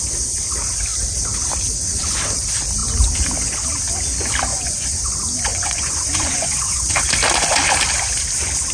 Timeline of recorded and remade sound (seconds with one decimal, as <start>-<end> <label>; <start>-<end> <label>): 0.0-4.5 recorded; 4.5-5.0 remade; 5.0-5.5 recorded; 5.5-6.9 remade; 6.9-8.7 recorded